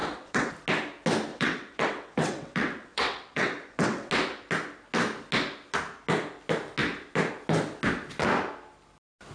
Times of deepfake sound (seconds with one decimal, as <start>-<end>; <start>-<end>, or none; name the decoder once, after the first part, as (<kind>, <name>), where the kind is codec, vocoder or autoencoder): 0.0-0.5 (vocoder, WaveNeXt); 1.3-4.1